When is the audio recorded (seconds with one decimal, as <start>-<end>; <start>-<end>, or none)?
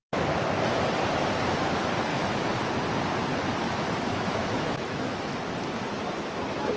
0.0-2.1; 2.7-3.6; 5.4-6.8